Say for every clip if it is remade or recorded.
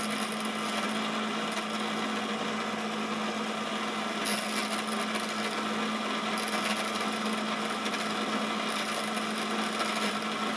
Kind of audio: recorded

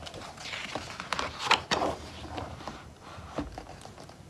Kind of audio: recorded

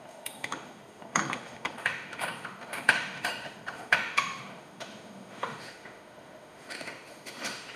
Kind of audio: remade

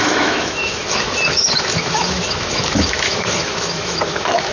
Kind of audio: remade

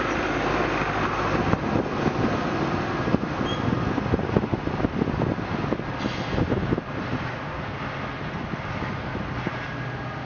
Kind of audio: recorded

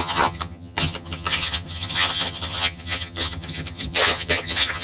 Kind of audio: remade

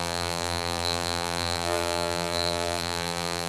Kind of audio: remade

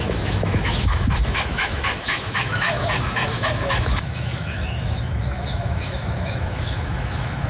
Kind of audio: remade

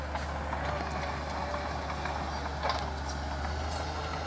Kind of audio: recorded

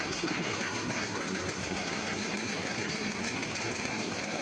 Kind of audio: remade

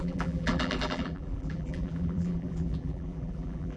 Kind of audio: remade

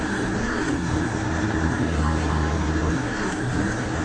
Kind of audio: remade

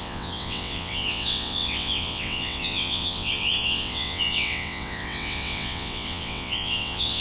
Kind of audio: remade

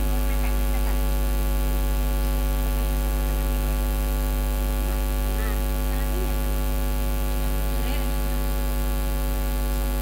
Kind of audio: recorded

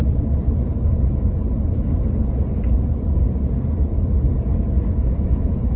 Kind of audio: recorded